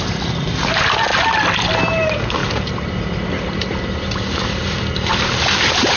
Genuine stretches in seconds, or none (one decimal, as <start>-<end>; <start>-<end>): 0.0-6.0